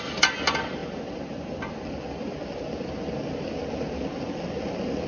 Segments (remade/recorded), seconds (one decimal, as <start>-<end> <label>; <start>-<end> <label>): 0.0-5.1 recorded